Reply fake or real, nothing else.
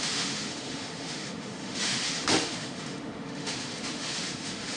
fake